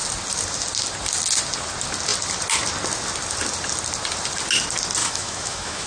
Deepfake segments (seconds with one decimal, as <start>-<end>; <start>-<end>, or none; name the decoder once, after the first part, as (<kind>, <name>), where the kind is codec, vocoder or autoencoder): 5.0-5.9 (autoencoder, DAC-VAE)